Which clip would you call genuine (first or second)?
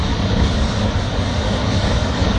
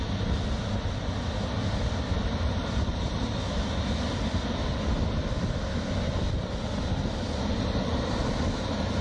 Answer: second